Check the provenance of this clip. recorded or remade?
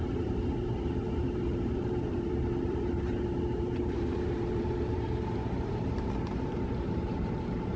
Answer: remade